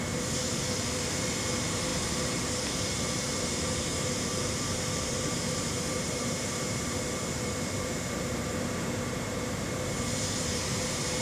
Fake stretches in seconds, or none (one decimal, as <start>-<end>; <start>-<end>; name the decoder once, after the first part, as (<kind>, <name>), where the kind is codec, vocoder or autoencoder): 0.0-11.2 (vocoder, BigVGAN v2)